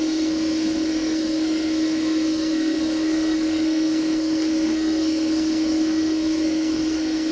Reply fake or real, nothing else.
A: fake